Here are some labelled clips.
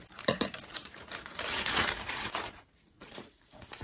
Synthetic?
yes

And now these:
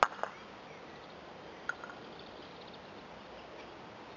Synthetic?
no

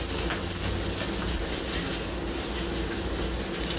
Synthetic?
no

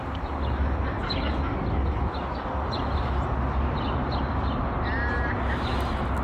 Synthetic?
no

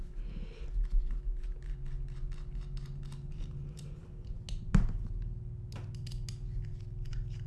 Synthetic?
no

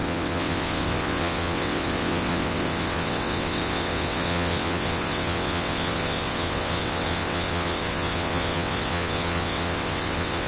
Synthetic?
yes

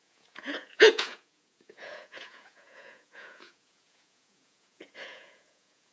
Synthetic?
yes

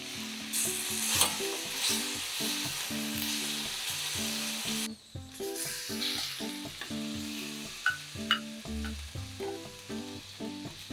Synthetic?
no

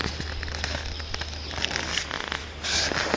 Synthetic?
yes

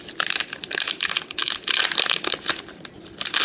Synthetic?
no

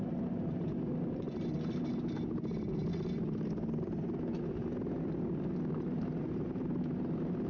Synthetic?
no